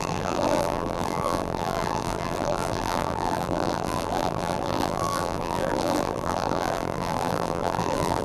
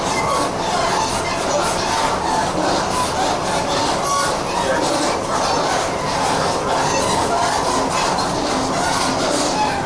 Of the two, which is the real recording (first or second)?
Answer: second